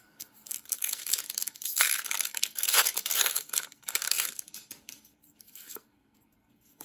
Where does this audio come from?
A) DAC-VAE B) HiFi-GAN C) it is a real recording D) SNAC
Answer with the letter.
D